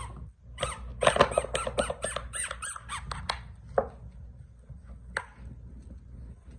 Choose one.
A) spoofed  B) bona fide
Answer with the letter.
B